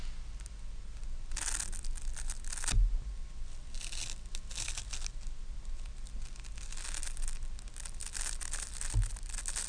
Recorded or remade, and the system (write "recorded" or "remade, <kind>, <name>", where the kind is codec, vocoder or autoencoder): recorded